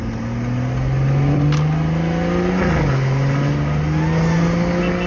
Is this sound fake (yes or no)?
no